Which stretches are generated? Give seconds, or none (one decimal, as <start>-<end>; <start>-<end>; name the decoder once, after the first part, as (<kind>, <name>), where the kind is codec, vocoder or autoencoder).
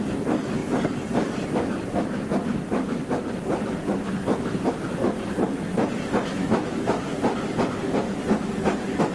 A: 6.3-7.0 (autoencoder, DAC-VAE)